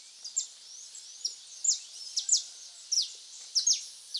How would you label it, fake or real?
real